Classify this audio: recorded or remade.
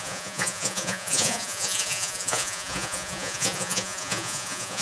remade